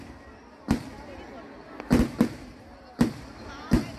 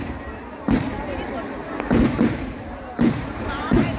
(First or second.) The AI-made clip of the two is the second